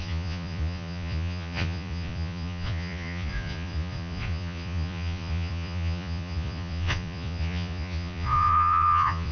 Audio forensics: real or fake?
fake